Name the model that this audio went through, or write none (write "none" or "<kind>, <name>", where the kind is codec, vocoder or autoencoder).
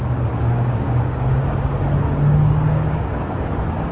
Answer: codec, DAC